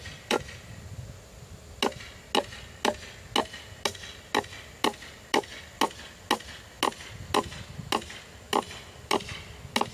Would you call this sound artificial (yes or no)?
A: no